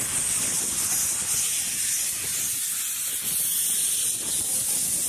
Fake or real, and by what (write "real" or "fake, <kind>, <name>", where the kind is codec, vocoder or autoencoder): real